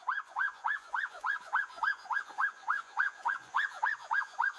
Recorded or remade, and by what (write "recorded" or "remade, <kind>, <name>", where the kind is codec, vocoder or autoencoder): remade, vocoder, Vocos